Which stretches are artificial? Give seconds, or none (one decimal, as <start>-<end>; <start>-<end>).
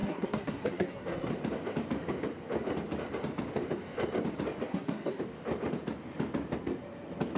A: 0.0-1.3; 4.7-5.2